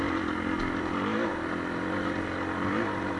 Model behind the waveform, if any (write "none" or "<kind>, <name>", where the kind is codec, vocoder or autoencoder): none